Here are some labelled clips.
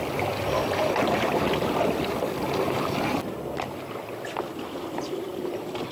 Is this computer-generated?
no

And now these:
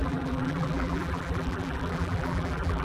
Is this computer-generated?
yes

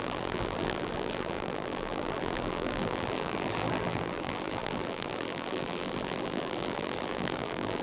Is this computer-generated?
yes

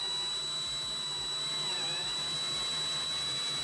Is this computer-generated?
no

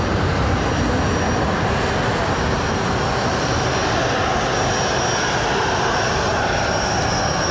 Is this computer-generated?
no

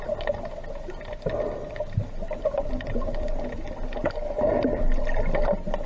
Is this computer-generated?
no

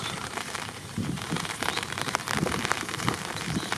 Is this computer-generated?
yes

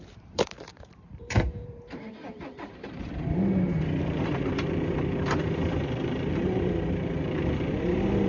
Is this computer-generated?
yes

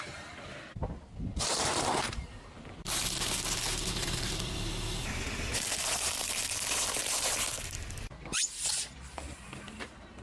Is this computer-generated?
yes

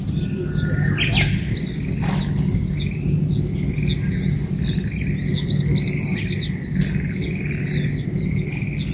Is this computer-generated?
no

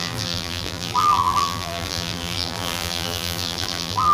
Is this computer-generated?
yes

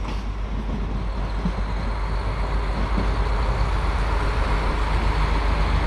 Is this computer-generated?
no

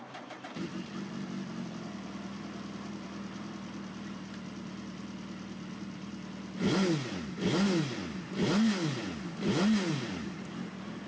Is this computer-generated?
no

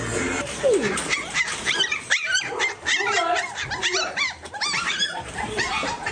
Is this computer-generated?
yes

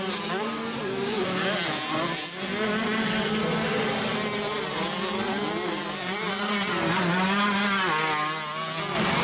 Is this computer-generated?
no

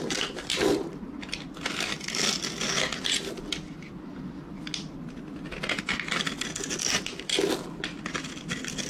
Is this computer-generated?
no